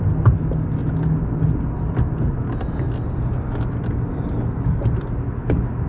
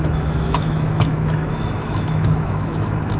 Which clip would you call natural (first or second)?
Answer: first